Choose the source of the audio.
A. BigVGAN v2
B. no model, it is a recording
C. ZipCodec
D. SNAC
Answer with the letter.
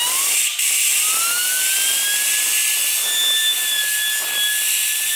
B